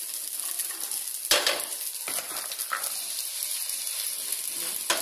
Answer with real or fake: real